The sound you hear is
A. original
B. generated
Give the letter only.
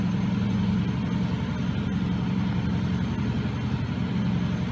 A